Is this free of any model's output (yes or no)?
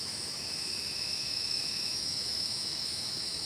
no